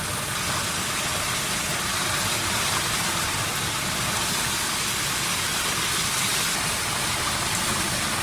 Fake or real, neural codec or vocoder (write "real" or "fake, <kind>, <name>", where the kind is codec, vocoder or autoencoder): real